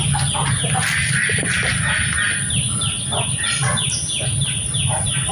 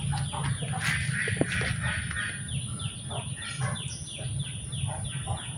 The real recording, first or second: second